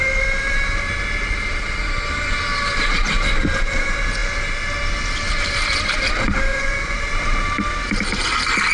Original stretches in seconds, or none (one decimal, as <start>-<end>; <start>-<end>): 0.0-6.5; 7.0-8.7